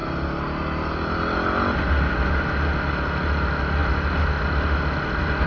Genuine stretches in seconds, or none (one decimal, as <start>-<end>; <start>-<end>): 0.0-5.5